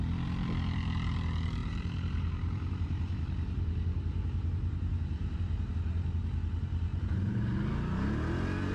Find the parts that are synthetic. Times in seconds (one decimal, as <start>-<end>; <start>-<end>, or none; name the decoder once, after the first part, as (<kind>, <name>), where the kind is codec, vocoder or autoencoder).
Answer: 1.6-5.7 (vocoder, BigVGAN v2); 6.9-7.4

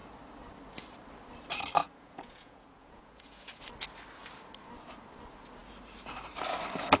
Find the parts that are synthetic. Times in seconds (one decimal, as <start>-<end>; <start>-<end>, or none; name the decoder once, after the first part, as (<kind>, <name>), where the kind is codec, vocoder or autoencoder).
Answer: 1.8-3.6 (vocoder, Vocos)

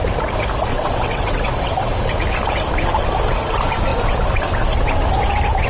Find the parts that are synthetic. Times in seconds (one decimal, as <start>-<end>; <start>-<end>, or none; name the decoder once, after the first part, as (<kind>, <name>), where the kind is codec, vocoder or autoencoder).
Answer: 0.7-1.9 (vocoder, WaveNeXt)

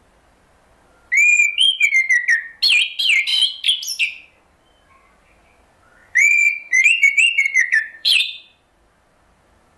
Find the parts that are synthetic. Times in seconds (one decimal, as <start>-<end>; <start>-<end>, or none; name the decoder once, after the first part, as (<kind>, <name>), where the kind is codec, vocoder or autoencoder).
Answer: 1.3-1.9 (vocoder, Vocos); 6.0-8.2

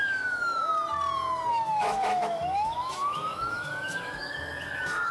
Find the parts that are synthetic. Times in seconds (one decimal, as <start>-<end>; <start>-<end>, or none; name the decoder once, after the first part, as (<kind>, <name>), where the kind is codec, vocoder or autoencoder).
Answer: 0.0-0.7 (autoencoder, DAC-VAE); 1.5-5.1

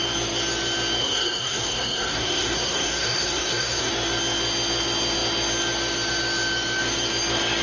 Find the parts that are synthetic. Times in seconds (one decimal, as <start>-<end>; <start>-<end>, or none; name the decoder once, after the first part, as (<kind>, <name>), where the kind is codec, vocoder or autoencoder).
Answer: 1.0-3.9 (codec, SNAC)

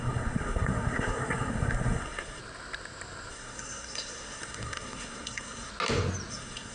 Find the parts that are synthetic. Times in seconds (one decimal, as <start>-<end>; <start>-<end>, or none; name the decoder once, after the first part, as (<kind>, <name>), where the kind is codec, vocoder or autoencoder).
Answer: 0.0-2.4 (codec, SNAC); 3.3-5.7; 6.3-6.7